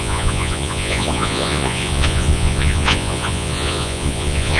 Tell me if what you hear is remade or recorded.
remade